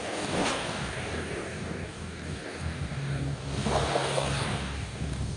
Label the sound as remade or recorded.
remade